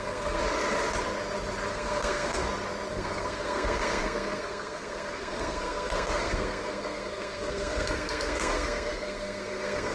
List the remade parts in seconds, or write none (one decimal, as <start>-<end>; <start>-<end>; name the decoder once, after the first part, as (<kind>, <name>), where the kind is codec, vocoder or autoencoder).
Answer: 0.0-0.4 (codec, SNAC); 1.7-2.4; 2.9-9.9